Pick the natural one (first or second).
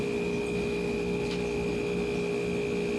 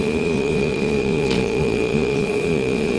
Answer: first